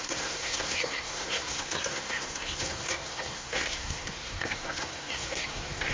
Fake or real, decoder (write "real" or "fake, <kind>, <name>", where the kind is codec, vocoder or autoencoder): fake, codec, SNAC